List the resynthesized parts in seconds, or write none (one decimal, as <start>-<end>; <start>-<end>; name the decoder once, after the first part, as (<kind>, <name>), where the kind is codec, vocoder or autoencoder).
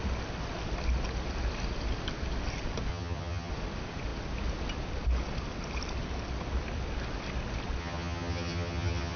2.9-3.5 (vocoder, HiFi-GAN); 7.8-9.2